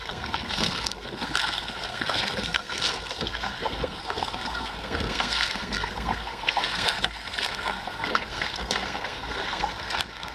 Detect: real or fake fake